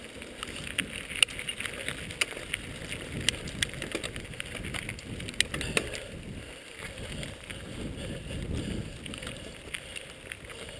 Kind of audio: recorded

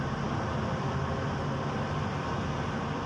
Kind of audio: recorded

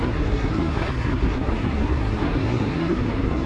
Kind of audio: remade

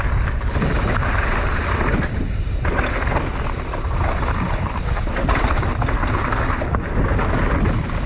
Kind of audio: recorded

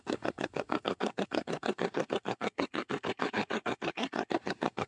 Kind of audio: remade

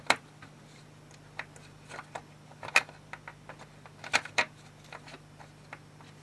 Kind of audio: recorded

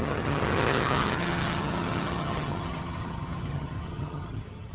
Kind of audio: remade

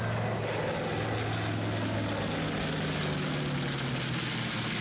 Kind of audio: recorded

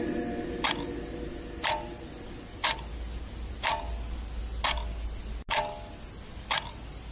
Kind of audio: recorded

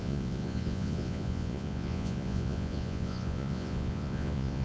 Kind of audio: remade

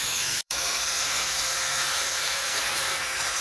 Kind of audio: remade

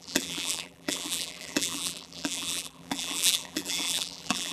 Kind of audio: remade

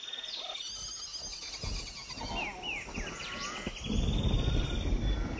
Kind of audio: recorded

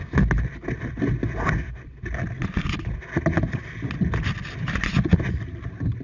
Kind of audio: recorded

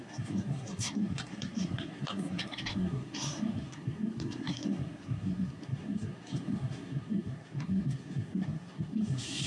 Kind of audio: remade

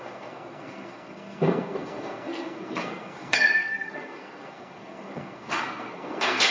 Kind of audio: remade